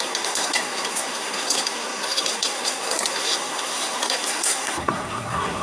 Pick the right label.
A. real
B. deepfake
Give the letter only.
B